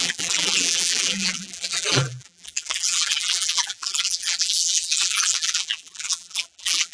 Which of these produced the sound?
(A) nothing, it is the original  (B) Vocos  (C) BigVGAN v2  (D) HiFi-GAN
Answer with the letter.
C